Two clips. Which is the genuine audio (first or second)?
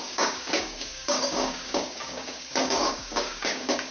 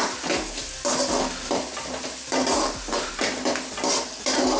second